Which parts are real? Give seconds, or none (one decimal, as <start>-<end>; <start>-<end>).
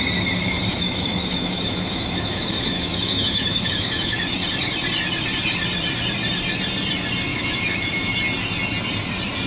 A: 0.0-0.7; 4.4-7.3; 8.2-9.5